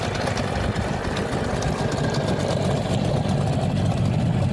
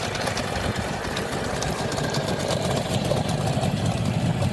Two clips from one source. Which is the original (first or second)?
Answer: first